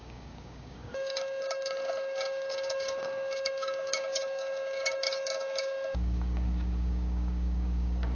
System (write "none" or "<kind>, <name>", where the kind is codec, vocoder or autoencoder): codec, DAC